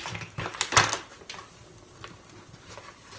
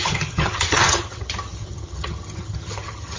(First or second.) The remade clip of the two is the second